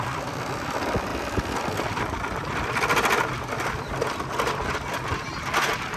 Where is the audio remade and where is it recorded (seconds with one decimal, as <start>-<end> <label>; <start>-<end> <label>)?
0.0-6.0 recorded